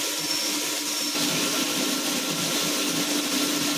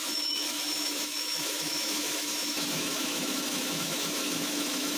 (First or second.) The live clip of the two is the first